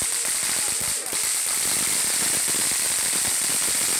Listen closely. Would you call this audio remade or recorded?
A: recorded